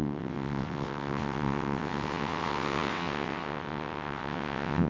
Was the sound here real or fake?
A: fake